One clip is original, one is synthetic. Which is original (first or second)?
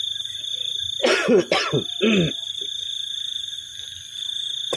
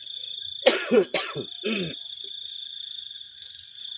first